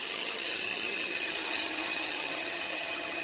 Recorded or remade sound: remade